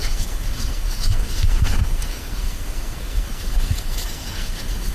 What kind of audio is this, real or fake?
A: fake